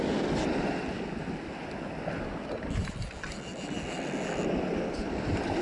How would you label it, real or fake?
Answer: real